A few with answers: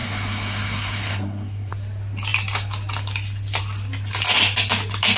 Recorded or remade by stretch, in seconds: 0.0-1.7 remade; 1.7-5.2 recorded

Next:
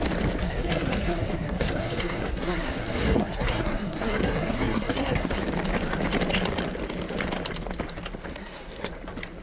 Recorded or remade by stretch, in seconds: 0.0-0.4 recorded; 0.4-5.4 remade; 5.4-8.3 recorded; 8.3-8.9 remade; 8.9-9.4 recorded

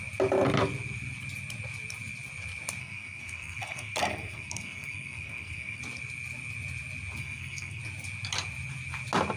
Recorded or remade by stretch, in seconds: 0.0-2.8 recorded; 2.8-5.8 remade; 5.8-7.2 recorded; 7.2-7.8 remade; 7.8-9.4 recorded

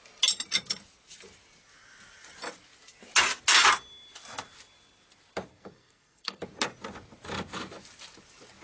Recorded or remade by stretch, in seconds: 0.0-5.5 recorded; 5.5-6.4 remade; 6.4-8.6 recorded